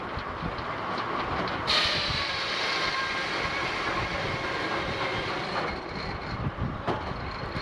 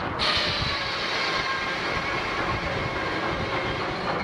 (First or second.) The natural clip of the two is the second